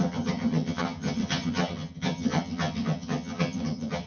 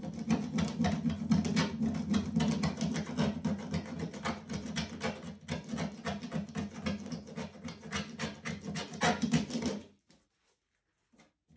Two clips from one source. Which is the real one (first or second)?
second